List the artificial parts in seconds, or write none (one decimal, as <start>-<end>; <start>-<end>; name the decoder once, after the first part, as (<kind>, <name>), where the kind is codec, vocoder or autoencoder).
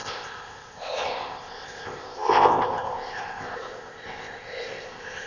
0.0-5.3 (codec, ZipCodec)